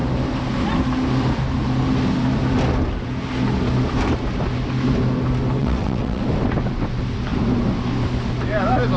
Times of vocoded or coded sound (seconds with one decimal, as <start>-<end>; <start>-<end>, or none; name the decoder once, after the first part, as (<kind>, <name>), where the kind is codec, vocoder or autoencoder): 5.6-6.2 (vocoder, WaveNeXt)